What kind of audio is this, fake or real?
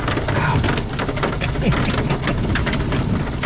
real